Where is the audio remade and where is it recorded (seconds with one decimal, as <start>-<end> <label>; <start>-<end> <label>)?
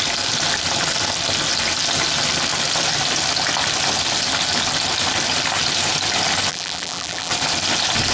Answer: 0.0-6.5 recorded; 6.5-7.3 remade; 7.3-8.1 recorded